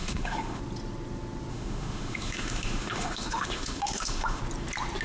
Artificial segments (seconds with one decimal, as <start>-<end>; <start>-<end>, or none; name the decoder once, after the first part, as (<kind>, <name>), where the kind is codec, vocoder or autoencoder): 0.0-0.6 (autoencoder, DAC-VAE); 1.5-4.4